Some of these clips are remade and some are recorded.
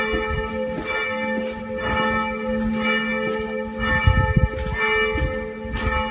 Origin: recorded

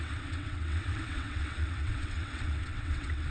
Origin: remade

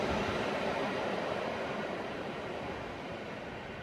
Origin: recorded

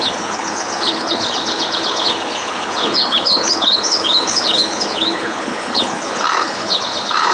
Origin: remade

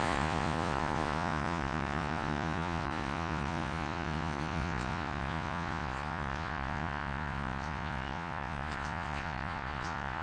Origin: remade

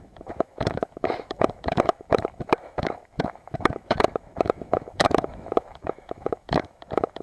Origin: remade